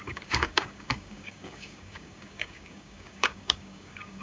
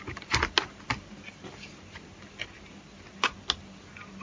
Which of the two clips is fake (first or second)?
first